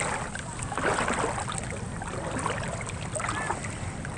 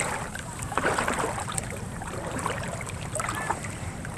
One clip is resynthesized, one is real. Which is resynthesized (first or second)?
second